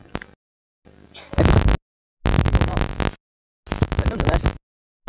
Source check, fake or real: real